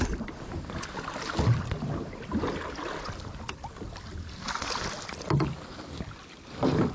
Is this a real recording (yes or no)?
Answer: yes